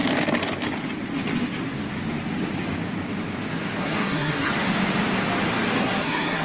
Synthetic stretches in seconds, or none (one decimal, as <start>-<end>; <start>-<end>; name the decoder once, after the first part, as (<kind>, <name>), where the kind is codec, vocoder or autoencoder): 3.8-4.5 (codec, SNAC); 5.8-6.4